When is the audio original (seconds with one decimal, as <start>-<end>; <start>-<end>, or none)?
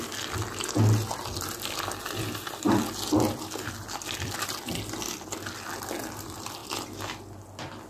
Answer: 0.0-7.9